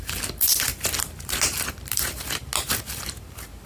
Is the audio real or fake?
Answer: real